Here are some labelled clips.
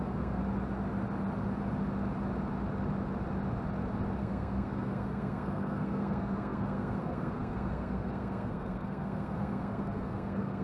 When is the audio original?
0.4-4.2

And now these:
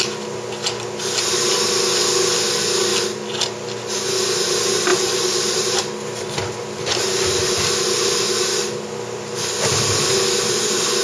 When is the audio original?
0.0-4.9; 5.8-11.0

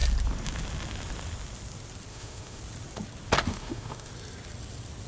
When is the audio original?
0.0-2.1; 2.6-3.5; 4.1-5.1

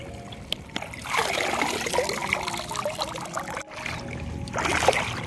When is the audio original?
2.2-5.3

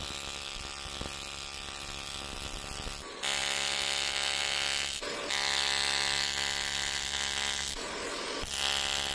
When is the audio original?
0.0-9.1

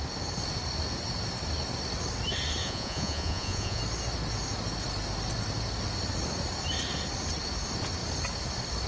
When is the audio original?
0.0-2.6; 3.8-8.9